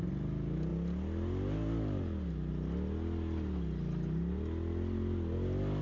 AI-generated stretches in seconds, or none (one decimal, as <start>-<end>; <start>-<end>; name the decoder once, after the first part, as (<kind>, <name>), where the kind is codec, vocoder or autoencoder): none